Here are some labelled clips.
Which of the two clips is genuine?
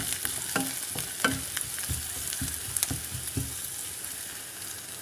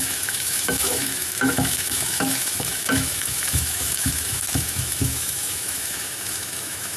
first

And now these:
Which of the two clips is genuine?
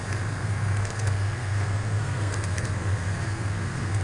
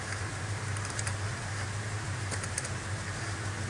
second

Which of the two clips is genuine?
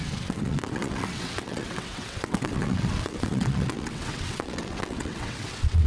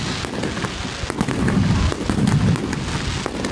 second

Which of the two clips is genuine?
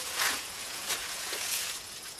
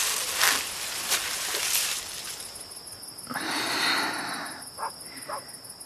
second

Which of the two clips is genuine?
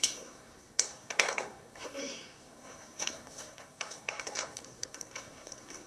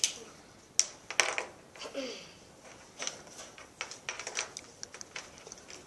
second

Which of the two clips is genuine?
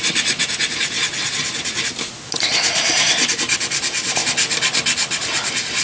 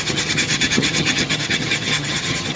first